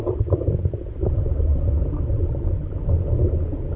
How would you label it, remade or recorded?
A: recorded